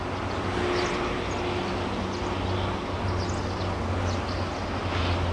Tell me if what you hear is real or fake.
real